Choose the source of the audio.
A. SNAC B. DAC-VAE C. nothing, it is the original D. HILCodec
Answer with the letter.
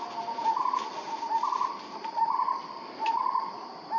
C